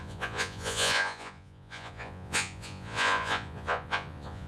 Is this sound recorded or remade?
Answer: remade